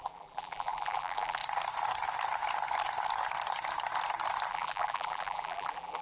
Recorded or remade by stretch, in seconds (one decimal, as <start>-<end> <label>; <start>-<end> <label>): 0.0-1.4 remade; 1.4-4.5 recorded; 4.5-6.0 remade

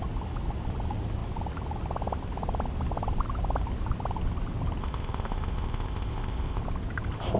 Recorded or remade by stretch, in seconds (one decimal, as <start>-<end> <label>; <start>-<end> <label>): 0.0-4.8 recorded; 4.8-6.6 remade; 6.6-7.4 recorded

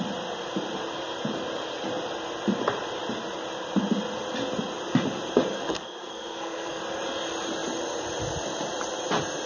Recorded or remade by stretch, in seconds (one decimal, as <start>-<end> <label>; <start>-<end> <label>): 0.0-5.5 recorded; 5.5-6.8 remade; 6.8-9.5 recorded

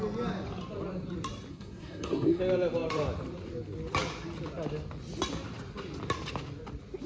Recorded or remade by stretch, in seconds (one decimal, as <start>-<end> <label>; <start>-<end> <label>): 0.0-1.5 recorded; 1.5-2.4 remade; 2.4-7.1 recorded

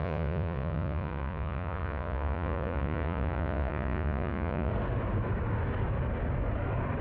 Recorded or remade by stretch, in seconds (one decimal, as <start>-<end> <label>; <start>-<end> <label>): 0.0-4.7 remade; 4.7-7.0 recorded